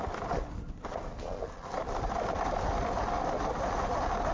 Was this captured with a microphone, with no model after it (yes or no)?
yes